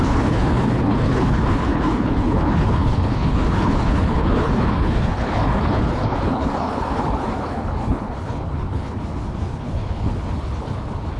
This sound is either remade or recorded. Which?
remade